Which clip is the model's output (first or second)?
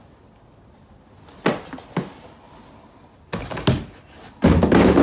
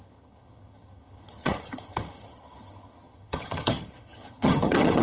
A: second